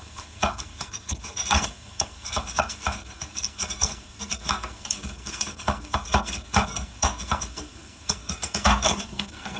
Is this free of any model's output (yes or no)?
no